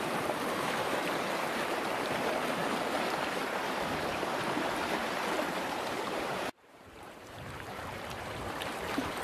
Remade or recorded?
remade